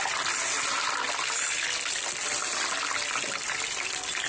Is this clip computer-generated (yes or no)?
no